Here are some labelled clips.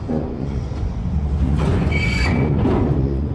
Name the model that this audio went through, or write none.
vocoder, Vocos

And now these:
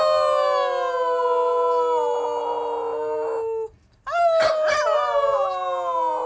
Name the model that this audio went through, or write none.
none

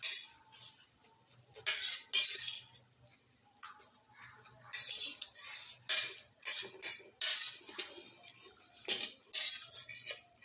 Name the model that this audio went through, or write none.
none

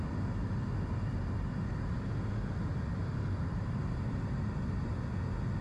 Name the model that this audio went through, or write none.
none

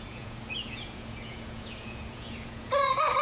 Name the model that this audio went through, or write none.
vocoder, Vocos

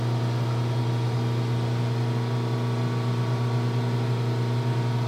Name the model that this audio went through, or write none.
none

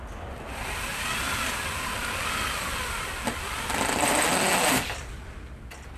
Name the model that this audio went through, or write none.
none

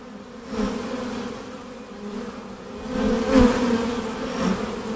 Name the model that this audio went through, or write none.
none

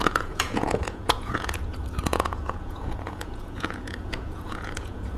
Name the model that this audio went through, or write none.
vocoder, Vocos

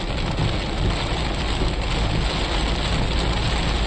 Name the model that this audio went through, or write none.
none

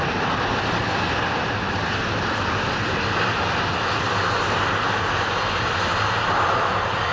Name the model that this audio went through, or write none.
none